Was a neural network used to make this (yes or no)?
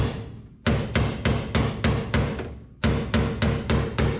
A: no